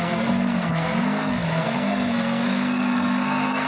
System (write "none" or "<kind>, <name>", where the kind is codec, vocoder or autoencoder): codec, SNAC